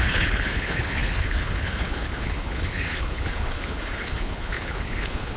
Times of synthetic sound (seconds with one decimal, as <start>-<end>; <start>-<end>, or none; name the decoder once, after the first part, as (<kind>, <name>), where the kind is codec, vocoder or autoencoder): 0.0-5.4 (codec, HILCodec)